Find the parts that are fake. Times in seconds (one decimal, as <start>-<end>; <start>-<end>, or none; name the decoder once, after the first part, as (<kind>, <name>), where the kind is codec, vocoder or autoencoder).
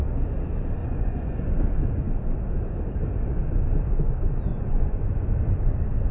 0.8-1.5 (vocoder, Vocos); 4.5-5.3